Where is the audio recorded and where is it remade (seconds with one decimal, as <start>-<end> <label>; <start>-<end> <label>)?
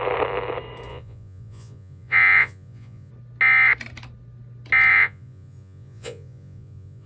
0.0-0.9 recorded; 0.9-3.1 remade; 3.1-4.9 recorded; 4.9-7.1 remade